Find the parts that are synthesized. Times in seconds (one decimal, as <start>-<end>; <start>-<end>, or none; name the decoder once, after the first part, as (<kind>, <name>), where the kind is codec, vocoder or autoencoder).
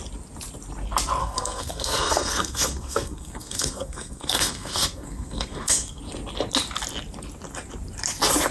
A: 1.2-6.0 (codec, SNAC)